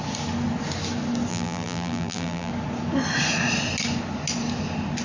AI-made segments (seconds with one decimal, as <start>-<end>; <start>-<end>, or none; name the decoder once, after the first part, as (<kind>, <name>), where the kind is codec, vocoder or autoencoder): 1.3-2.5 (vocoder, BigVGAN v2)